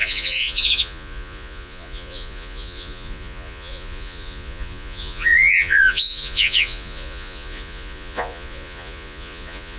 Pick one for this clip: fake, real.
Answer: fake